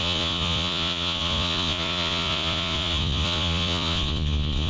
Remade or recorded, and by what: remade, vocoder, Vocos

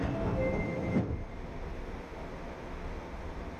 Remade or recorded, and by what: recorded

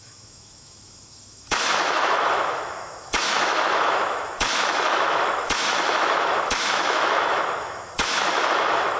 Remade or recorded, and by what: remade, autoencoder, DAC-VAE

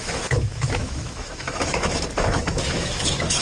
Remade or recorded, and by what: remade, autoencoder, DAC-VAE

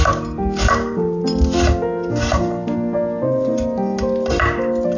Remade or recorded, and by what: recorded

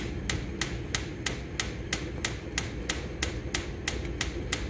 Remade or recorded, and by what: recorded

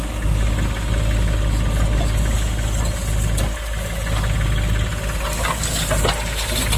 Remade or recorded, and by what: recorded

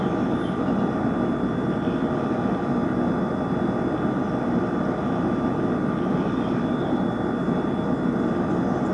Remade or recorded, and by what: recorded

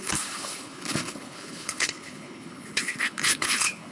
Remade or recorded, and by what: remade, codec, HILCodec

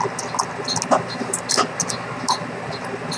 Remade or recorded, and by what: recorded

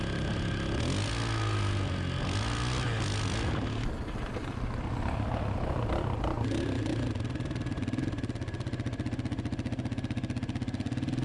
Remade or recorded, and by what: recorded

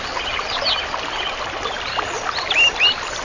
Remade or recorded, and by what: recorded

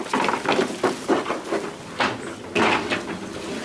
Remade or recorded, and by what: recorded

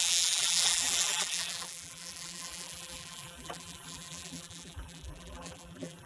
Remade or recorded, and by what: remade, vocoder, BigVGAN v2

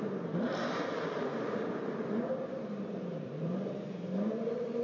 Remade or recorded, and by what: remade, vocoder, BigVGAN v2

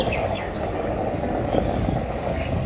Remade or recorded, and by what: remade, codec, DAC